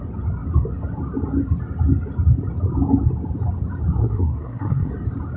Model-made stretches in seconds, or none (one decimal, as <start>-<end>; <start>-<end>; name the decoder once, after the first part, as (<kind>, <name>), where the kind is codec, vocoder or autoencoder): 4.0-4.9 (codec, SNAC)

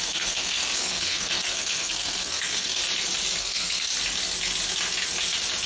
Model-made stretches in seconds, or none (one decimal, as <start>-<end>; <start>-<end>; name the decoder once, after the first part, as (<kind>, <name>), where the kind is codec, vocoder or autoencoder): 0.0-2.8 (codec, SNAC); 3.4-3.9

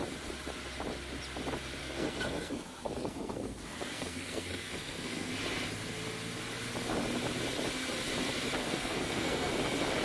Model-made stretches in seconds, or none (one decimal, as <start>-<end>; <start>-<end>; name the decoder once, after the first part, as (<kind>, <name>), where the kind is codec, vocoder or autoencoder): 1.8-5.3 (codec, SNAC); 8.6-9.5

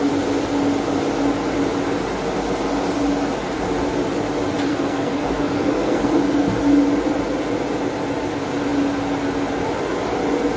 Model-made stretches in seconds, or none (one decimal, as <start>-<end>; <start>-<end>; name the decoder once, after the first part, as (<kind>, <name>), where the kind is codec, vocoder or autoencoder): 4.7-6.1 (codec, SNAC)

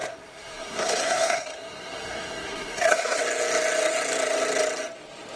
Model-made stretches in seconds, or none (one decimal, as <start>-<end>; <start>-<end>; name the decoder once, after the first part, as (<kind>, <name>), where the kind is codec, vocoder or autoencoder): 0.0-3.2 (codec, SNAC)

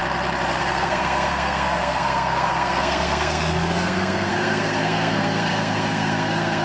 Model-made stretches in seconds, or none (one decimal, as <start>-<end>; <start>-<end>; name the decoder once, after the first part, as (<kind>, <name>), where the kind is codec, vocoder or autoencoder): 0.6-6.6 (codec, SNAC)